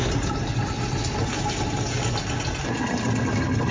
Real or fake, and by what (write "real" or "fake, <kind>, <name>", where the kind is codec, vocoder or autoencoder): real